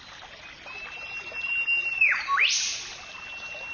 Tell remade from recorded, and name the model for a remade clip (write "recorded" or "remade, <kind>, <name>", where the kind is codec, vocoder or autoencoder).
recorded